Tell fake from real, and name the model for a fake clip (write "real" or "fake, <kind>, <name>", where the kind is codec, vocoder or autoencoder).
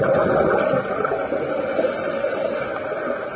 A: real